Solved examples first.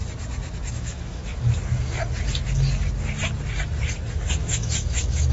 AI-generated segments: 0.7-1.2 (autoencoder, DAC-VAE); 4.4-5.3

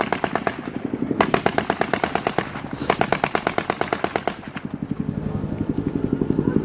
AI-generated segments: none

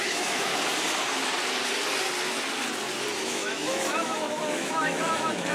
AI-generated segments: 0.0-0.5 (autoencoder, DAC-VAE); 3.2-5.5

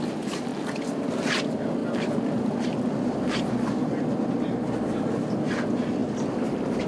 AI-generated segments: none

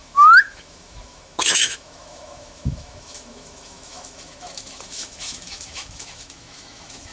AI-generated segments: 0.0-7.1 (autoencoder, DAC-VAE)

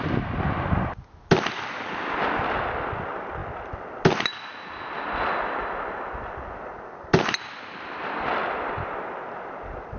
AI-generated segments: none

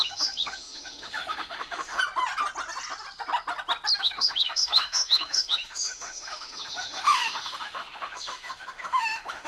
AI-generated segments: 0.0-2.0 (autoencoder, DAC-VAE); 4.0-9.5

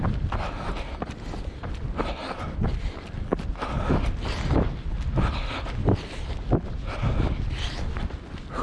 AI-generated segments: none